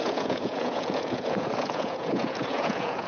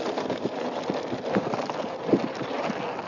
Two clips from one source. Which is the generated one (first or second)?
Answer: first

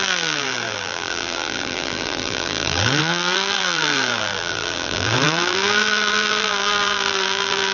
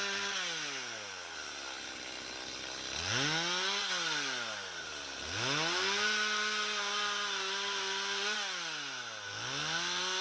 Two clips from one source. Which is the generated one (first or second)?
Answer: first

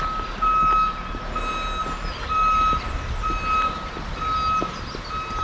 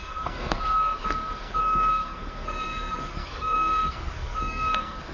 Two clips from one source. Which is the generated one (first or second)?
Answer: second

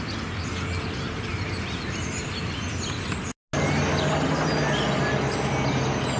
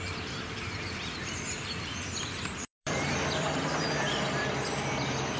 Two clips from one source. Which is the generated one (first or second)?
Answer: second